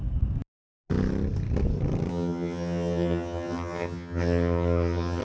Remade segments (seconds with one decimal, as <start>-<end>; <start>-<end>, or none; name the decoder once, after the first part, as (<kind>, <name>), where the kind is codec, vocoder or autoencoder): 2.1-5.2 (vocoder, HiFi-GAN)